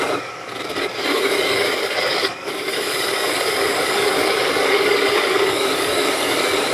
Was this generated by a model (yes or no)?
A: yes